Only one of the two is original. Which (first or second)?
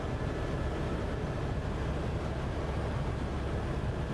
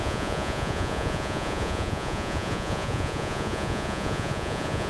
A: first